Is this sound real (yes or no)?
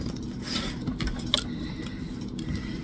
yes